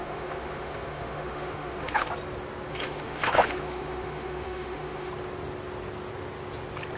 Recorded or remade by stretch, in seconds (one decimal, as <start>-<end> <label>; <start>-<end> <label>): 0.0-2.1 remade; 2.1-2.7 recorded; 2.7-5.1 remade; 5.1-7.0 recorded